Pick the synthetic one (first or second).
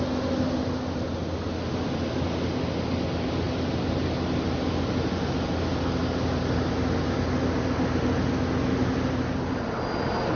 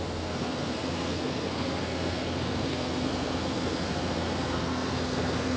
second